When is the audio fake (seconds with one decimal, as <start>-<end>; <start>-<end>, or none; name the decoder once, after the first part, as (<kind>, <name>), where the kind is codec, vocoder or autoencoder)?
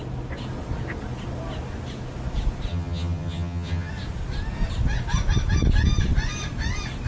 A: 2.7-3.9 (vocoder, HiFi-GAN)